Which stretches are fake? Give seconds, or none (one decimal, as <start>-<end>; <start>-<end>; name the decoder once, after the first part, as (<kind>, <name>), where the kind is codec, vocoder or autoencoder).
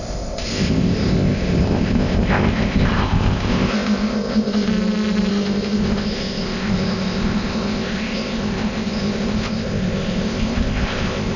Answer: 0.0-4.7 (codec, ZipCodec); 5.3-11.4